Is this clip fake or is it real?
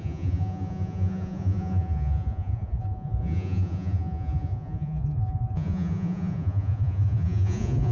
fake